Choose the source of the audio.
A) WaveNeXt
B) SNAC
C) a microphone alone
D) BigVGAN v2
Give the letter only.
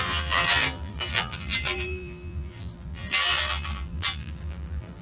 D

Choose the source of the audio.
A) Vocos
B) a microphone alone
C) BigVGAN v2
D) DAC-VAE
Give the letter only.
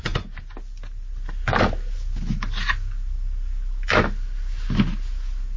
B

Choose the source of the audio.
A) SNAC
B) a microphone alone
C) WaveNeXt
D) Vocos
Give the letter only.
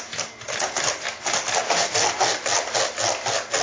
B